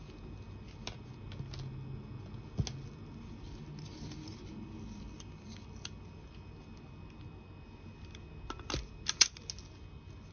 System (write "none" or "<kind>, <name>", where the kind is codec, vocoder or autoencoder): none